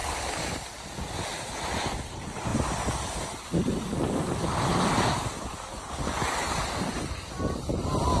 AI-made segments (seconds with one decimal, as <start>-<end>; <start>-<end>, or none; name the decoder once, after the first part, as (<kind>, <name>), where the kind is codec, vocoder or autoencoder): none